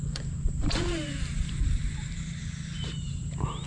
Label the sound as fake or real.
fake